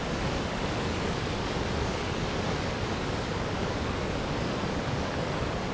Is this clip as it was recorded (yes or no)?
no